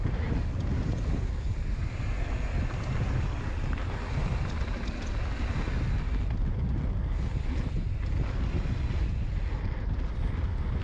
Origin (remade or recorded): recorded